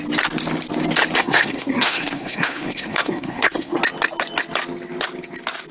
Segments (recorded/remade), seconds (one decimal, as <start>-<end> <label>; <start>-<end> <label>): 0.0-1.2 recorded; 1.2-3.8 remade; 3.8-5.7 recorded